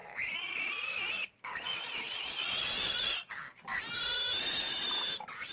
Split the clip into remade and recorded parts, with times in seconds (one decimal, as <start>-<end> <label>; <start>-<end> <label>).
0.0-3.3 remade; 3.3-5.5 recorded